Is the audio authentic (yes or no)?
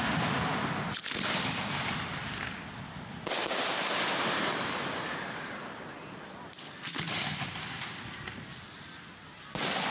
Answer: yes